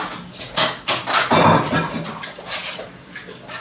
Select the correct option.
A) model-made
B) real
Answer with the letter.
B